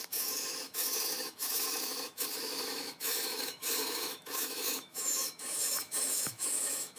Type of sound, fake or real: fake